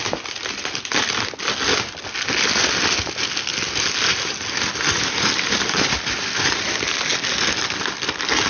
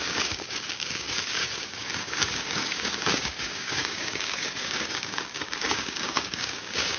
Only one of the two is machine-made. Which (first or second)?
second